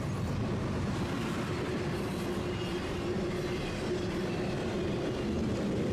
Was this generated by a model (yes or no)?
no